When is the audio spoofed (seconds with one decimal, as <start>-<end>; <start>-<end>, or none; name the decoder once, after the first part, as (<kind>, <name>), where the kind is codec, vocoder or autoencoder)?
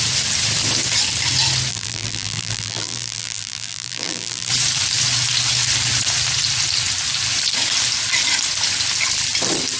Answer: 1.7-4.5 (vocoder, BigVGAN v2)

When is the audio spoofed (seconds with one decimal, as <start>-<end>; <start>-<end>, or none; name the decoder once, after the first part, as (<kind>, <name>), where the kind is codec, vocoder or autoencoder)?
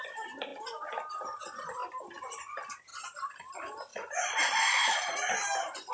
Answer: 0.0-0.5 (vocoder, BigVGAN v2); 1.1-1.8; 2.3-2.9; 3.5-5.9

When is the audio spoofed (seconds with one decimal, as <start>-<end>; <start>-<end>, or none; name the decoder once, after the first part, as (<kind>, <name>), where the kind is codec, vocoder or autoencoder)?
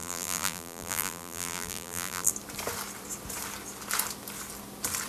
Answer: 0.0-2.3 (vocoder, BigVGAN v2)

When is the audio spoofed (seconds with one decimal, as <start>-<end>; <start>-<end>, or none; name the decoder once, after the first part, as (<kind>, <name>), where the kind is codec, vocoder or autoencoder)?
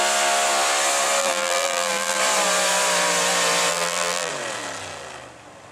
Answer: 1.2-2.2 (vocoder, BigVGAN v2); 3.7-4.3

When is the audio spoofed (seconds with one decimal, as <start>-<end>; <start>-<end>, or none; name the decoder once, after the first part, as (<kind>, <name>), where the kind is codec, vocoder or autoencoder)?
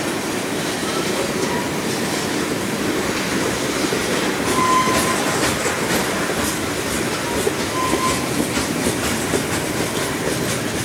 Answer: none